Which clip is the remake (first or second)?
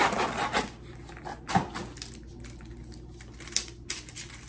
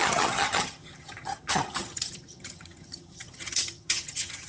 second